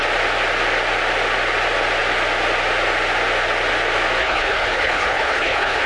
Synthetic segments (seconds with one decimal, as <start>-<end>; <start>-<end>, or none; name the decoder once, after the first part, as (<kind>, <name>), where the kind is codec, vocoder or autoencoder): 4.2-5.9 (codec, HILCodec)